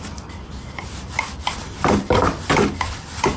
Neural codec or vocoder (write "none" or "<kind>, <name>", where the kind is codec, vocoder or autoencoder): vocoder, BigVGAN v2